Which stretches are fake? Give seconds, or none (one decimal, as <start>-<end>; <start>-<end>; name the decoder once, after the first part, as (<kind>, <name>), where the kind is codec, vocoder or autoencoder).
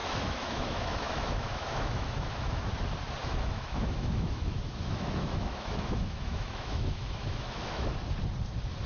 0.0-2.7 (autoencoder, DAC-VAE); 3.2-7.9